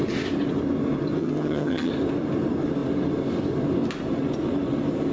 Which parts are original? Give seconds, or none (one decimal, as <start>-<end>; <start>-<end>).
0.0-1.2; 1.9-5.1